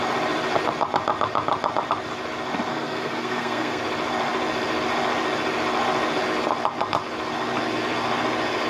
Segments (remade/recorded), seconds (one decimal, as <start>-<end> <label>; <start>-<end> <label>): 0.0-2.7 recorded; 2.7-3.8 remade; 3.8-8.7 recorded